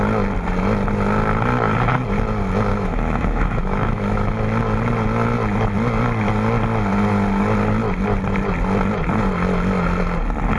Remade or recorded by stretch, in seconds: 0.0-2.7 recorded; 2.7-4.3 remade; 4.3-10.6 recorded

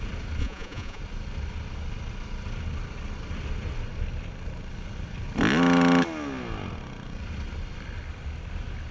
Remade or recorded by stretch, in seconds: 0.0-0.4 recorded; 0.4-1.0 remade; 1.0-8.9 recorded